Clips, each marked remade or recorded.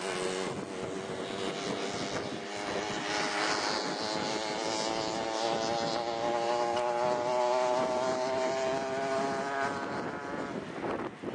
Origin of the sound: recorded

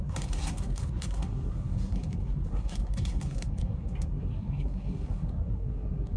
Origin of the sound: remade